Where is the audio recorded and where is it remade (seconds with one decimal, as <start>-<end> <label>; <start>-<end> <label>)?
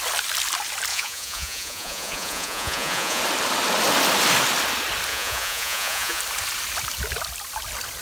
0.0-0.9 recorded; 0.9-3.2 remade; 3.2-5.1 recorded; 5.1-6.2 remade; 6.2-8.0 recorded